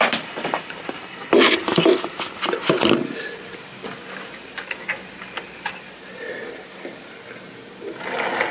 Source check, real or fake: real